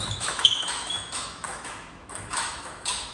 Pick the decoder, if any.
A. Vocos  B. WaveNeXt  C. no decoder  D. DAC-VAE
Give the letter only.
D